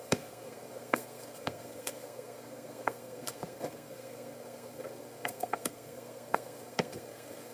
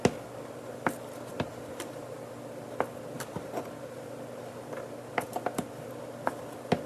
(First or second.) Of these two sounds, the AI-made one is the first